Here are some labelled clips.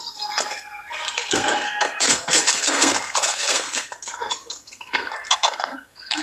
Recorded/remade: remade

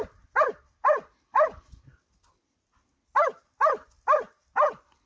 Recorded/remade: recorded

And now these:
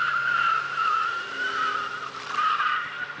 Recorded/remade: recorded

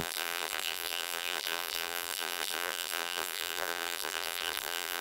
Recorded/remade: remade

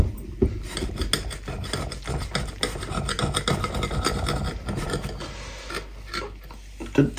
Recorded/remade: recorded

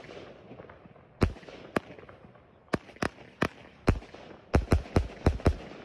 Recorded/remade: recorded